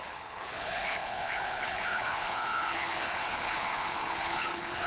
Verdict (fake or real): fake